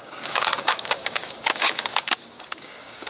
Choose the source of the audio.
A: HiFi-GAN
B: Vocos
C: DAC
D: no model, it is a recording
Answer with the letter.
C